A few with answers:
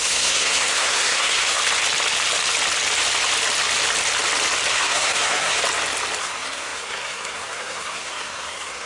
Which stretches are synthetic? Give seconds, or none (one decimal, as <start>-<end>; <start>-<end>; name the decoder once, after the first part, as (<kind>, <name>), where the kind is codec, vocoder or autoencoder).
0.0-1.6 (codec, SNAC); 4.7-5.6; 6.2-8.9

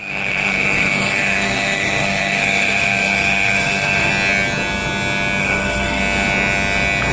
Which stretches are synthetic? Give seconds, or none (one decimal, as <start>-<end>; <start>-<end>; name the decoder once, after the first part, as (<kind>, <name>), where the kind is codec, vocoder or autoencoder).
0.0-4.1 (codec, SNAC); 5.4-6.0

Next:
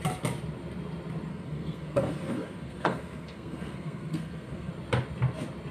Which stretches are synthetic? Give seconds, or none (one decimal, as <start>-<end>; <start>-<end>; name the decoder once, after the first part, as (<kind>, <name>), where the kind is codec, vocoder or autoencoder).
1.3-4.7 (codec, SNAC)

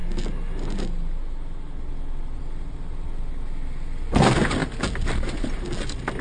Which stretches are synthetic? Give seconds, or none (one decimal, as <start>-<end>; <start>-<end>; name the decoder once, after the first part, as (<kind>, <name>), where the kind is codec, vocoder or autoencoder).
none